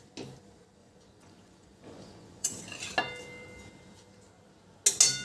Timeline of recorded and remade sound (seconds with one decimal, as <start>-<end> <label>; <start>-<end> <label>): 0.0-0.8 recorded; 0.8-2.6 remade; 2.6-5.2 recorded